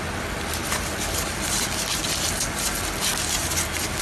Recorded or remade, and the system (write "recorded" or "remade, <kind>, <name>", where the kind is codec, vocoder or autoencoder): recorded